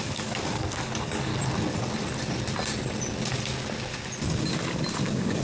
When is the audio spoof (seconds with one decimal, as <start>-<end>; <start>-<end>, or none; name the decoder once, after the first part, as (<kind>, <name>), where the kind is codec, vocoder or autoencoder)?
0.0-1.3 (codec, DAC); 4.5-5.4